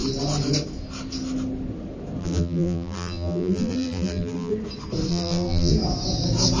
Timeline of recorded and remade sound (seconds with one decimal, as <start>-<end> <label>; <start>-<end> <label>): 0.0-2.2 recorded; 2.2-4.5 remade; 4.5-5.1 recorded; 5.1-5.7 remade; 5.7-6.6 recorded